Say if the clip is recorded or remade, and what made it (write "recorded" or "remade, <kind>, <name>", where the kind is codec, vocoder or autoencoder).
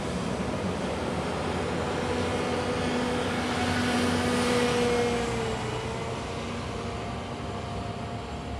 recorded